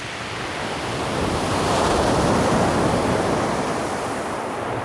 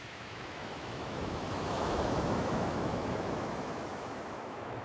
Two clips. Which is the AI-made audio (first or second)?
second